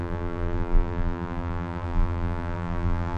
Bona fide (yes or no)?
no